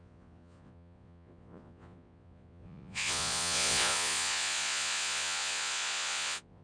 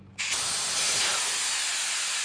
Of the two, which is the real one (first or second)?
second